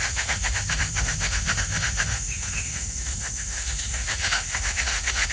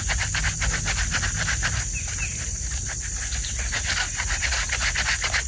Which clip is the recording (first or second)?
second